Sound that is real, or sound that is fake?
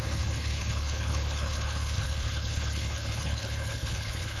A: fake